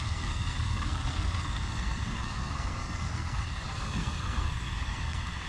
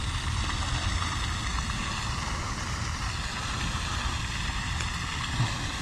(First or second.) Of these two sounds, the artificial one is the first